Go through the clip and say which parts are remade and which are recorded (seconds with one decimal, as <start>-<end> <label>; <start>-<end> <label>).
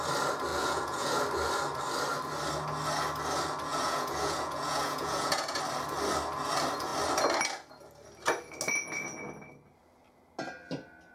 0.0-0.5 recorded; 0.5-1.2 remade; 1.2-3.7 recorded; 3.7-5.6 remade; 5.6-11.1 recorded